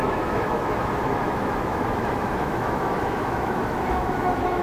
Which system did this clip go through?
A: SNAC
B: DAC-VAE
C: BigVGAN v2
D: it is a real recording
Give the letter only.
B